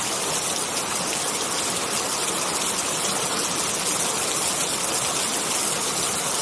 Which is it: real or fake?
real